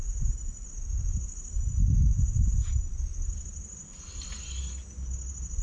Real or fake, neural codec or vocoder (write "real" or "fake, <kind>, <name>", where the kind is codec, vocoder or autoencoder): real